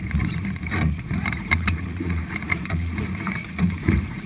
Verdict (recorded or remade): remade